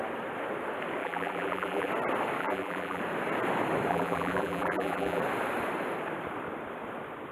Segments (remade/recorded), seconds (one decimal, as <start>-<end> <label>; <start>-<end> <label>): 0.0-1.0 recorded; 1.0-1.9 remade; 1.9-2.4 recorded; 2.4-3.0 remade; 3.0-3.9 recorded; 3.9-5.2 remade; 5.2-7.3 recorded